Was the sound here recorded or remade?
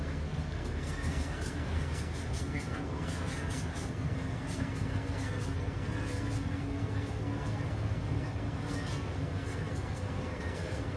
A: remade